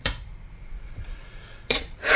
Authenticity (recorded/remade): remade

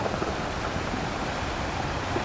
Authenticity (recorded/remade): recorded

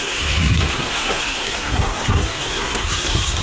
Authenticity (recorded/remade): remade